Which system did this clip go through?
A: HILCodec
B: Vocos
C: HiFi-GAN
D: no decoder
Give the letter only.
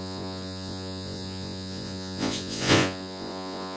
B